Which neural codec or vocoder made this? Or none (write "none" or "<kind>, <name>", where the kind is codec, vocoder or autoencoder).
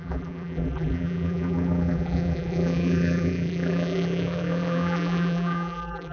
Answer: vocoder, BigVGAN v2